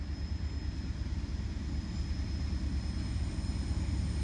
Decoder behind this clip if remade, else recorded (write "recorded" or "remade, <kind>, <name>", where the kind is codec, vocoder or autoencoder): recorded